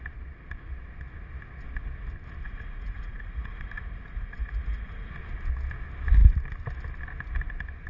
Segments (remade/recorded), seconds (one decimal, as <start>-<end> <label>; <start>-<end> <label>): 0.0-2.4 recorded; 2.4-5.1 remade; 5.1-7.9 recorded